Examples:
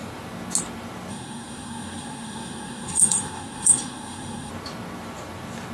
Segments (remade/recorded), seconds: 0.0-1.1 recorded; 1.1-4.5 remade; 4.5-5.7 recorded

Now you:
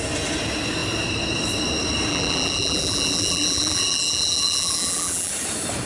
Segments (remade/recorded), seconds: 0.0-2.1 recorded; 2.1-5.3 remade; 5.3-5.9 recorded

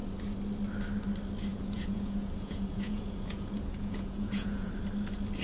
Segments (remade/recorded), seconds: 0.0-1.5 recorded; 1.5-4.7 remade; 4.7-5.4 recorded

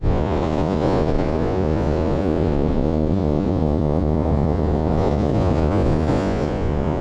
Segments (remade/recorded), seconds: 0.0-7.0 remade